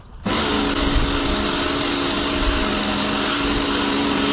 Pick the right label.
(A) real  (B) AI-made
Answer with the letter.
A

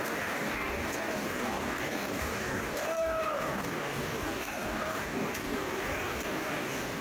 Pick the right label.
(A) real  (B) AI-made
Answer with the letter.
B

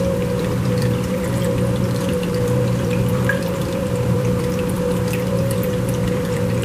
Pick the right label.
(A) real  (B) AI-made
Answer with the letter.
B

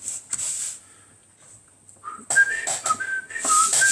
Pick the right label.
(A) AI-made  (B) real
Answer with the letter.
B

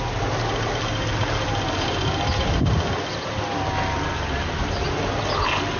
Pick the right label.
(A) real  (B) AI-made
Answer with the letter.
A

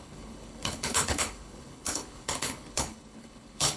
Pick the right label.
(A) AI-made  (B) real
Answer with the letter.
A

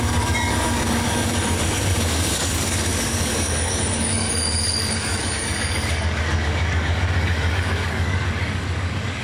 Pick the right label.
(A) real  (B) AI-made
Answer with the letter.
B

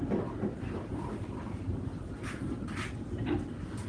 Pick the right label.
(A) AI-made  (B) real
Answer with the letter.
B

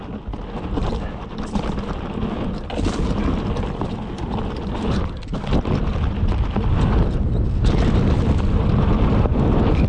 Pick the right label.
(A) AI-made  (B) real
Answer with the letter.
B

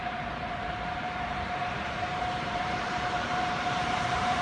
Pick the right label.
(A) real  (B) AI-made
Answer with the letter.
B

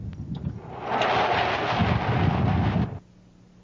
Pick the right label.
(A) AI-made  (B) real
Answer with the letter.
B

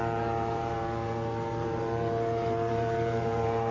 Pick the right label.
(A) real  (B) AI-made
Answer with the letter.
B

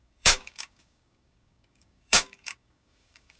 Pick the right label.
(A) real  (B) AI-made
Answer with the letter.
B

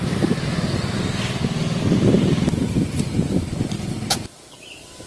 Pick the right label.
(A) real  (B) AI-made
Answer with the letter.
A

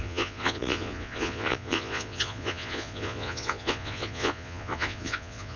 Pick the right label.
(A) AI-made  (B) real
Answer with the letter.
A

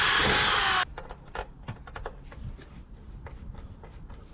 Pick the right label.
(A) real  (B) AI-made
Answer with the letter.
A